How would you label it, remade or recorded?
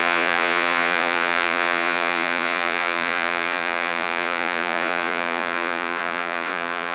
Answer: remade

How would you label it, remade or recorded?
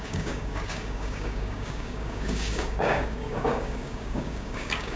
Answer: remade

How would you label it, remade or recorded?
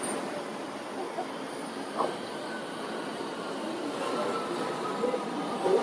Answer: remade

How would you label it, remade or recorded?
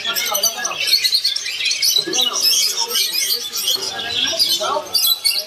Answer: recorded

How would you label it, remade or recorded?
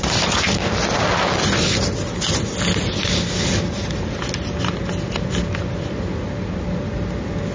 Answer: recorded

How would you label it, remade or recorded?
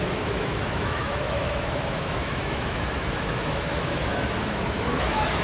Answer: remade